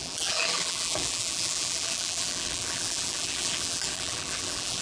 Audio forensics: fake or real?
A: fake